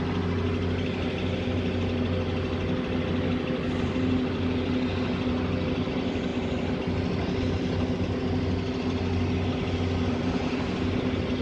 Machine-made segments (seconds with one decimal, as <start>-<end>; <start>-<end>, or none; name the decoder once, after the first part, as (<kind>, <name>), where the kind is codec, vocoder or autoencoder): none